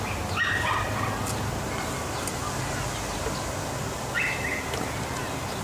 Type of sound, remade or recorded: recorded